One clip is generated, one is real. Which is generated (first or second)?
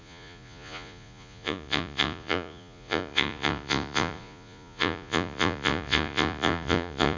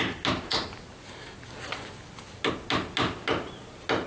first